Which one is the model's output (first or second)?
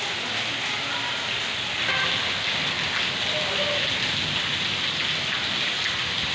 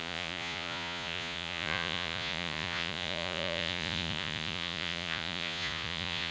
second